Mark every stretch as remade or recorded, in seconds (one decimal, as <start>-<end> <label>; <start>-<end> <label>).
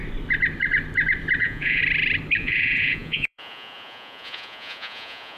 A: 0.0-1.4 recorded; 1.4-1.8 remade; 1.8-2.4 recorded; 2.4-5.4 remade